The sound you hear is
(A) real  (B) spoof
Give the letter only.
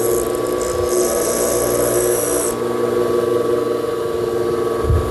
A